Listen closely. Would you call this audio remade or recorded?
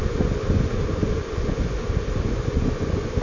remade